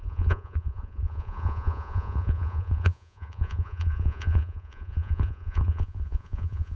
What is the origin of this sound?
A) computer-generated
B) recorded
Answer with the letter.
A